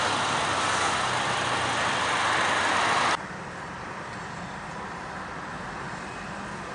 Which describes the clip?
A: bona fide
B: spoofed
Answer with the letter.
A